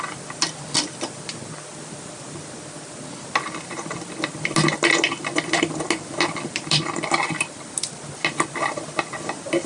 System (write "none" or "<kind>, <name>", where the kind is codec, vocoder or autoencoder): none